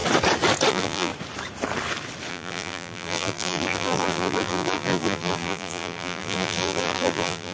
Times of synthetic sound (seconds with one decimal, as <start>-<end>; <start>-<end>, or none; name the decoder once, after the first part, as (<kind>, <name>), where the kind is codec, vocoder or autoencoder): 0.7-1.1 (vocoder, BigVGAN v2); 2.3-7.5